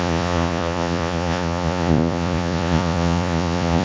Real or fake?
fake